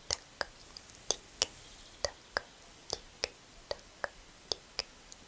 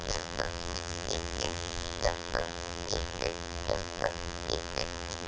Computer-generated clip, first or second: second